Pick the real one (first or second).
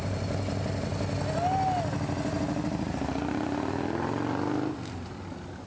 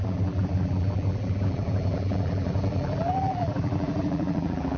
first